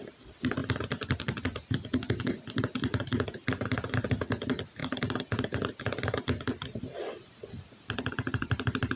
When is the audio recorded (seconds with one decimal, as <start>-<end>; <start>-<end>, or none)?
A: 0.0-9.0